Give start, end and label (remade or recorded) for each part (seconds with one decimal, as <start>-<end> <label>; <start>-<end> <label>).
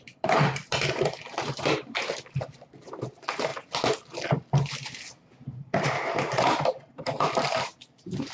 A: 0.0-3.5 remade; 3.5-4.3 recorded; 4.3-8.3 remade